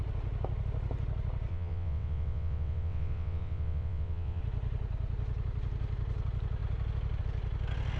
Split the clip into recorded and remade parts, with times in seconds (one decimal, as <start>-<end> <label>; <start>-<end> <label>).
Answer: 0.0-1.5 recorded; 1.5-4.4 remade; 4.4-8.0 recorded